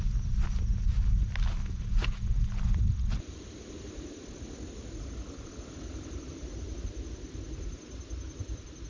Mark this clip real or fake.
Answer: real